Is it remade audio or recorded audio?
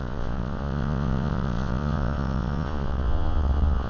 remade